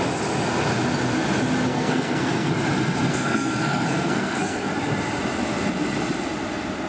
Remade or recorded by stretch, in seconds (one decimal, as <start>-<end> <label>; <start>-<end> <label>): 0.0-1.7 recorded; 1.7-2.5 remade; 2.5-3.1 recorded; 3.1-4.7 remade; 4.7-6.9 recorded